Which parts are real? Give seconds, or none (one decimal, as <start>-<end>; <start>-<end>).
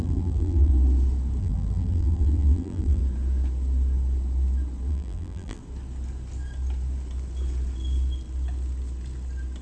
0.7-1.4; 3.0-4.9; 5.6-9.6